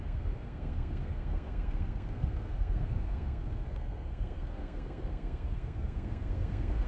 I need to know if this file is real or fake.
fake